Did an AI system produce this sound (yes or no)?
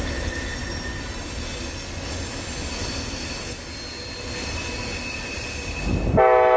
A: no